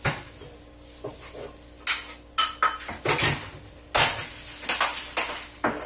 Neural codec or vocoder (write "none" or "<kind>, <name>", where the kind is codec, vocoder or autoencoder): none